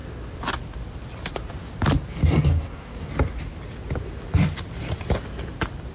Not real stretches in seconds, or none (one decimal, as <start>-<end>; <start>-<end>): 2.5-3.1